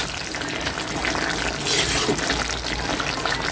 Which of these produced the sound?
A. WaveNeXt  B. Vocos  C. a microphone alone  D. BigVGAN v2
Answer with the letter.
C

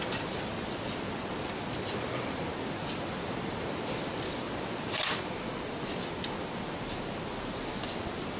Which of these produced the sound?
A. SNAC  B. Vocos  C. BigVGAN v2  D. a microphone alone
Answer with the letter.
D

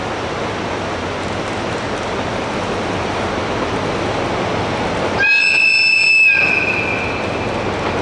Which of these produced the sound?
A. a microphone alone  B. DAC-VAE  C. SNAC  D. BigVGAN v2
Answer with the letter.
A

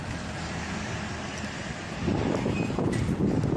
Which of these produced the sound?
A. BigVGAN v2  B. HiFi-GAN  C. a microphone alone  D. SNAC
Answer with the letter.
C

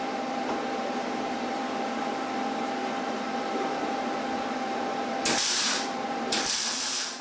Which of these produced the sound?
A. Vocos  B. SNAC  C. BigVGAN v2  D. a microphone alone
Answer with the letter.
C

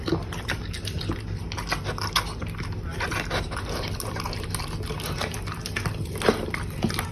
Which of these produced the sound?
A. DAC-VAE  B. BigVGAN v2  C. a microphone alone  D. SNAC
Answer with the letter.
C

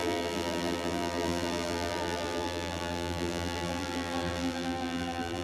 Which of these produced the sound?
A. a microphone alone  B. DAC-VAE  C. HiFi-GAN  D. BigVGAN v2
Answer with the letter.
D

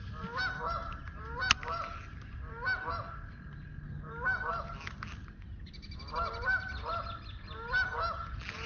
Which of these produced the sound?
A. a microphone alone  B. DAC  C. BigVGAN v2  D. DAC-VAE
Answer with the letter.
A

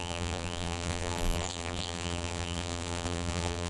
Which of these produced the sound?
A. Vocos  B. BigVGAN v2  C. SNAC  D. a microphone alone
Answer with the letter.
B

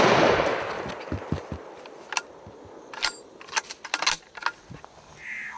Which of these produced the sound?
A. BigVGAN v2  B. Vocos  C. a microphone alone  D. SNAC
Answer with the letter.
C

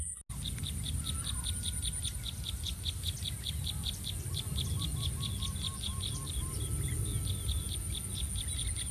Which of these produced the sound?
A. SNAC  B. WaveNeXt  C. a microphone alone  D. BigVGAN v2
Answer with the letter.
C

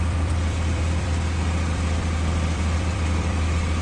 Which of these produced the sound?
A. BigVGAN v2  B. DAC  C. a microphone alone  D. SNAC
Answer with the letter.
A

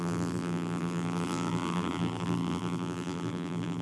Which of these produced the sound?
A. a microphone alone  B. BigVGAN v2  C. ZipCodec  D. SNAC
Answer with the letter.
B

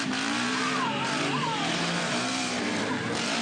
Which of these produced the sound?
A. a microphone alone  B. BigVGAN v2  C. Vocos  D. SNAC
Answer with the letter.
B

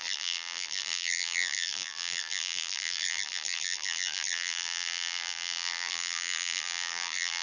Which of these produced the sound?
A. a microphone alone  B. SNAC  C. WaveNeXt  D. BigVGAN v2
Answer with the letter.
D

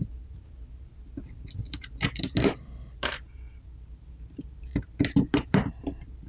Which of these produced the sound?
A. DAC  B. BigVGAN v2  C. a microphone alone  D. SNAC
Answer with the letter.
B